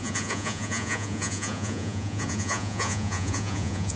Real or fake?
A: fake